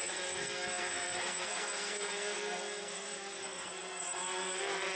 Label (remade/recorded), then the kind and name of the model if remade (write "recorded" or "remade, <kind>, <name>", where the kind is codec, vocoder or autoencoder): remade, codec, SNAC